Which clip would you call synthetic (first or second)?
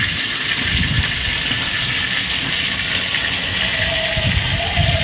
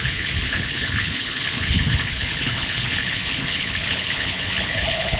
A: second